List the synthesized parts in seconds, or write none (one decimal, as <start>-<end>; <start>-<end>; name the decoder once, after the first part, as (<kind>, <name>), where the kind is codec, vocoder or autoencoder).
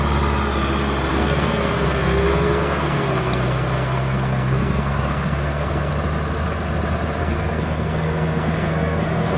1.1-5.9 (codec, SNAC); 7.2-9.4